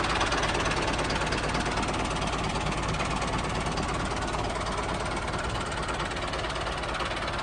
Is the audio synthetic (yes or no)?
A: no